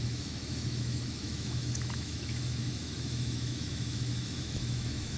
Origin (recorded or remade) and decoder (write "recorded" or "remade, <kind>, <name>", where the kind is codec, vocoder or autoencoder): remade, autoencoder, DAC-VAE